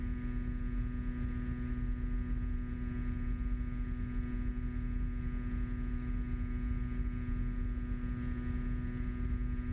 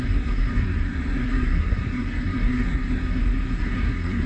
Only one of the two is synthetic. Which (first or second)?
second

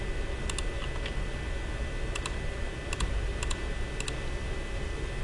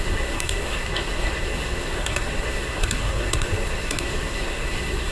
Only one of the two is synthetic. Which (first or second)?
second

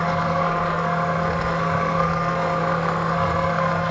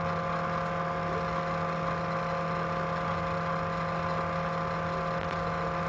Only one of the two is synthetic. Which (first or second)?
first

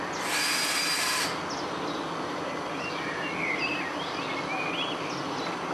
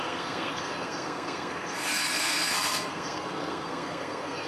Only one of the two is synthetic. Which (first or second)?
second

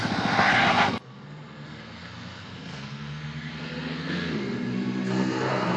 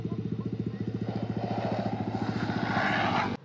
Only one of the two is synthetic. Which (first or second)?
first